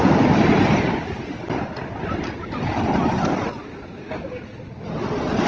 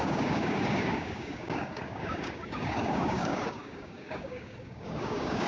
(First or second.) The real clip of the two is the first